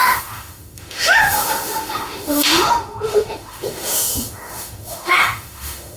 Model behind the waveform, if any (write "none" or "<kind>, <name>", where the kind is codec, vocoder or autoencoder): autoencoder, DAC-VAE